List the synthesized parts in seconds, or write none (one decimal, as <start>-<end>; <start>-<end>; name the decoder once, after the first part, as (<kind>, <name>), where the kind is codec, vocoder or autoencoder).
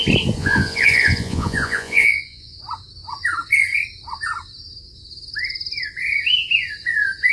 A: 0.4-2.6 (vocoder, Vocos)